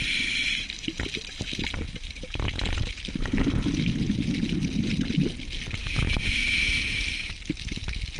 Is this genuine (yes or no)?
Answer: yes